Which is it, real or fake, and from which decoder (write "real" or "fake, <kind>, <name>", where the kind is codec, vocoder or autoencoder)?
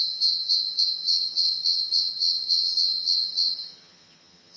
fake, vocoder, HiFi-GAN